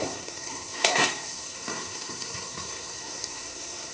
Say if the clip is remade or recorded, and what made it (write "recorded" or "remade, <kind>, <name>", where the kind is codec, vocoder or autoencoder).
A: remade, codec, SNAC